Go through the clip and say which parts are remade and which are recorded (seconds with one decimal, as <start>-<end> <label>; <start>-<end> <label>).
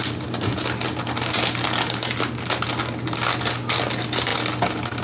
0.0-5.0 recorded